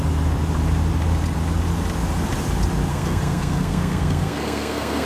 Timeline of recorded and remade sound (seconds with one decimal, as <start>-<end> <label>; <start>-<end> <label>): 0.0-2.9 recorded; 2.9-5.1 remade